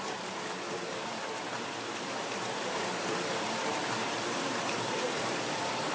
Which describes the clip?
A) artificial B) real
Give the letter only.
A